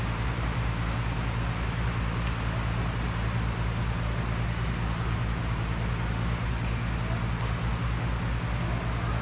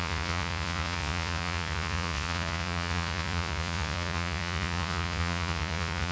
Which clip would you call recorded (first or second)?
first